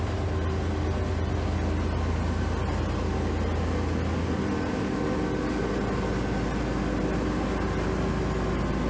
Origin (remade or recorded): recorded